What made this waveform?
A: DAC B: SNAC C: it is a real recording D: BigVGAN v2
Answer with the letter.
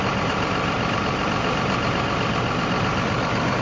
D